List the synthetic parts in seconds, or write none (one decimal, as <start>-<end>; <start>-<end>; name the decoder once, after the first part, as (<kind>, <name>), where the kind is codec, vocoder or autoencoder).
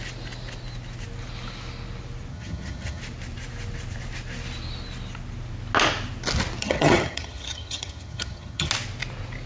2.3-3.0 (vocoder, HiFi-GAN); 6.6-8.7